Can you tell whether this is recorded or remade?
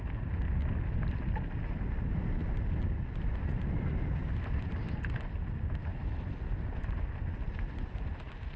recorded